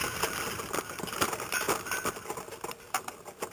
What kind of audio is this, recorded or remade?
recorded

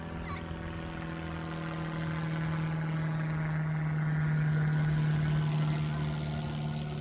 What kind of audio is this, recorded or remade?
recorded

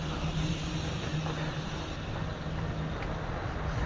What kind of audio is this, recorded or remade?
recorded